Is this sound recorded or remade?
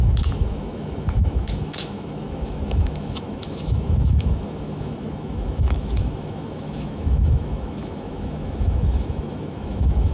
remade